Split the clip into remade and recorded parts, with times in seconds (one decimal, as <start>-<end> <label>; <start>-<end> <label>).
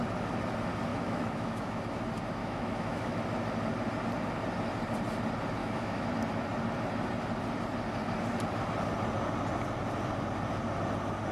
0.0-0.9 recorded; 0.9-1.8 remade; 1.8-2.4 recorded; 2.4-3.2 remade; 3.2-5.6 recorded; 5.6-6.1 remade; 6.1-11.3 recorded